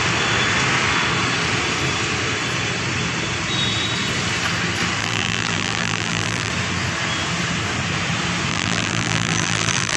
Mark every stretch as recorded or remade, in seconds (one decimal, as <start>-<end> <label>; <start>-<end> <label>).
0.0-5.0 recorded; 5.0-6.5 remade; 6.5-8.5 recorded; 8.5-10.0 remade